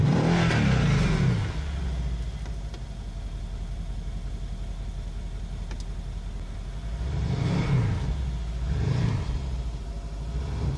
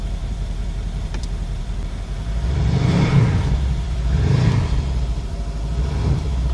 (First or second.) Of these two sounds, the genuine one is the first